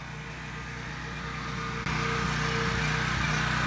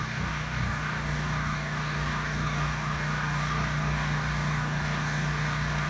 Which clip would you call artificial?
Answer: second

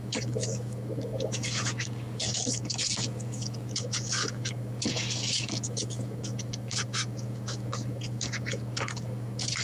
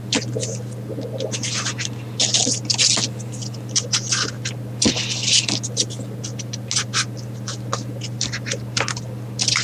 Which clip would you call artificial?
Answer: first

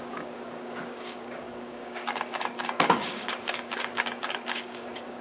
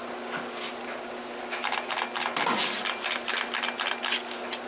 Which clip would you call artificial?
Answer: first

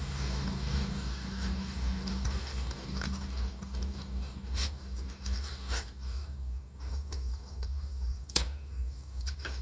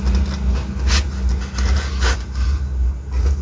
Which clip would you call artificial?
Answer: first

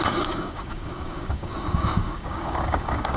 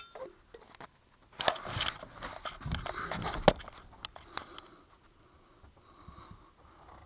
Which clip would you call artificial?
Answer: first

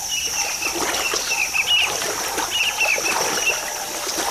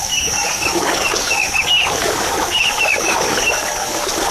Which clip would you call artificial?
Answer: second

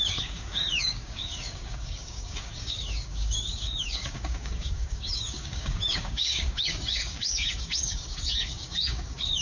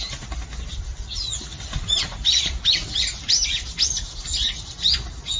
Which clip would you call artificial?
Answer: first